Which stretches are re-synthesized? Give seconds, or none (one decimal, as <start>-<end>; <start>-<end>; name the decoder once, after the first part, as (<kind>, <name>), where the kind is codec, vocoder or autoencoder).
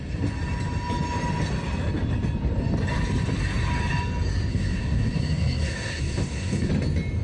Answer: 4.5-6.7 (codec, SNAC)